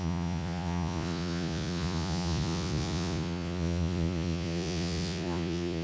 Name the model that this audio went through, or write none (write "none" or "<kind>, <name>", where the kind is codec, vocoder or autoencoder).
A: vocoder, Vocos